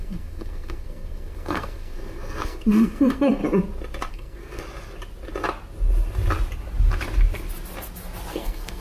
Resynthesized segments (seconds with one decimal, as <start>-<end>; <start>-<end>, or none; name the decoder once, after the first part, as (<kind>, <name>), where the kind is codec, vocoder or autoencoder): 0.0-3.4 (codec, SNAC); 4.1-4.6; 8.3-8.8

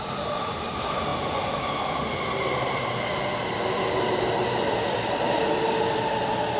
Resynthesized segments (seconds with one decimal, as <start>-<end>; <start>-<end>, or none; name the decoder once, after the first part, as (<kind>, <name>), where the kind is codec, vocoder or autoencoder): none